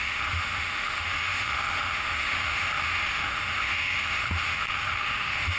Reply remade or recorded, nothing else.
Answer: remade